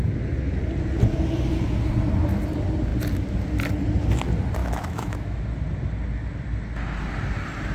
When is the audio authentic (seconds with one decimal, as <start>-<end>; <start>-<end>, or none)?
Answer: 0.0-4.6; 5.4-7.7